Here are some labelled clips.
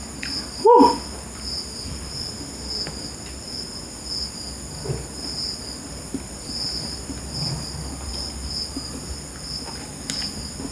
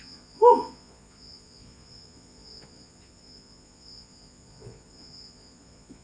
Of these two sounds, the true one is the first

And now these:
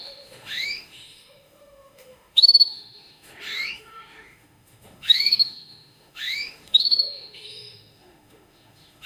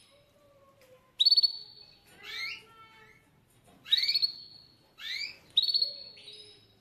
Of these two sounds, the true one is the second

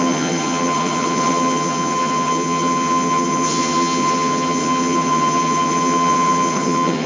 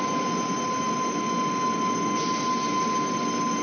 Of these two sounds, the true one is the second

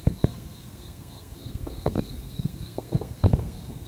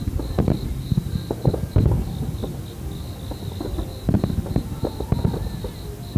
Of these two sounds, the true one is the second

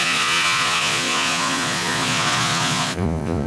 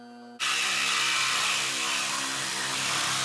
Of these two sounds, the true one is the second